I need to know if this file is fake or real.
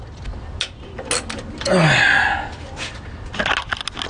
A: real